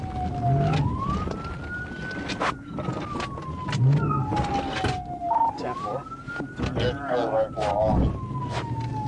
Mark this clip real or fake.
real